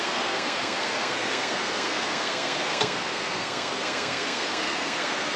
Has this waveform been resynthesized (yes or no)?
yes